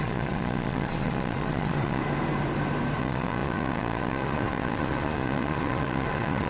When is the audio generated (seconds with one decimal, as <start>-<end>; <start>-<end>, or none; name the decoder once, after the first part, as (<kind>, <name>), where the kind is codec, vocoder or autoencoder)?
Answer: 0.0-2.0 (vocoder, Vocos); 3.0-6.5